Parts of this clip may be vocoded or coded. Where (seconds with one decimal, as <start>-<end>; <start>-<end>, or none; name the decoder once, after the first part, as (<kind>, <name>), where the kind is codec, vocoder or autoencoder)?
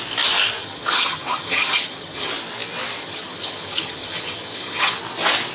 0.6-2.3 (vocoder, HiFi-GAN); 3.0-4.9